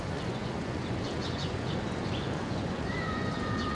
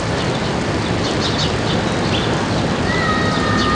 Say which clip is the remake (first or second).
first